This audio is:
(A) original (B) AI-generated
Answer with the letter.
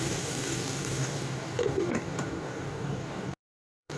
B